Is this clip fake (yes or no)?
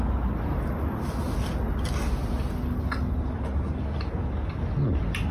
no